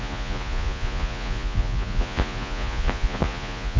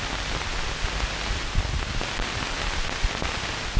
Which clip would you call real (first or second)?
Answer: second